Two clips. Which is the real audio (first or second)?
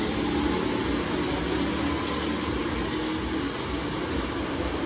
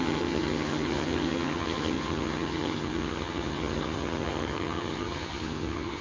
first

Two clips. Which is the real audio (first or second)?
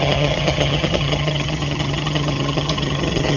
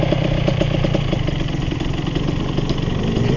second